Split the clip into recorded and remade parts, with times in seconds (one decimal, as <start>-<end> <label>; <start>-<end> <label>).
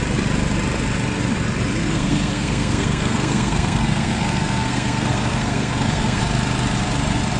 0.0-1.8 recorded; 1.8-6.2 remade; 6.2-7.4 recorded